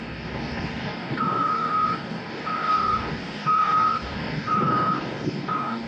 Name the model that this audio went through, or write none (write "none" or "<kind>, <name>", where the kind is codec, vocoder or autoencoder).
codec, DAC